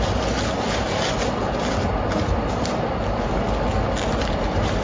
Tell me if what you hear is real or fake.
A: real